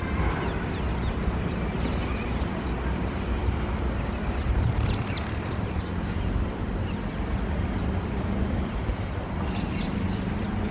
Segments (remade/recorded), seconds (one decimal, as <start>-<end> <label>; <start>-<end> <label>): 0.0-10.7 recorded